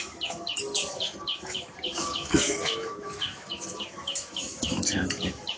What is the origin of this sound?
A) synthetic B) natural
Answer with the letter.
A